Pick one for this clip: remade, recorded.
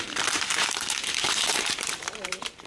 remade